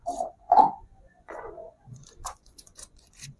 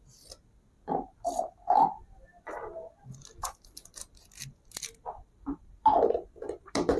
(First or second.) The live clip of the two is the second